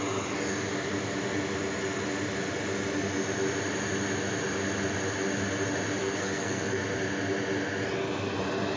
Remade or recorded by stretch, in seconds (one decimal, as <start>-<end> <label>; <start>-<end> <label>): 0.0-6.0 recorded; 6.0-6.8 remade; 6.8-8.8 recorded